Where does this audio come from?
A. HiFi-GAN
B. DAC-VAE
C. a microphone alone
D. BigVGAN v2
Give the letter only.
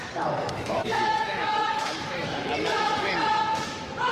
B